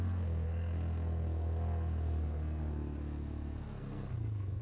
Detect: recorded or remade remade